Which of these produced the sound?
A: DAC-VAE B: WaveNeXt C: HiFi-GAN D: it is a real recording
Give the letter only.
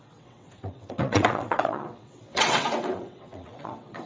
B